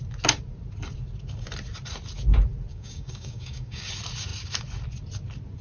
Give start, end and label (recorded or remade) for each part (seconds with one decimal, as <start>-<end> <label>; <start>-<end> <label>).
0.0-2.7 recorded; 2.7-3.9 remade; 3.9-5.6 recorded